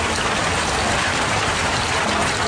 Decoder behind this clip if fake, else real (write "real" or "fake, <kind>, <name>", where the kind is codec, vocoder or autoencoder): real